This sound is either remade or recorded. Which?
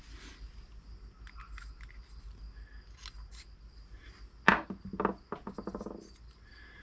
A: recorded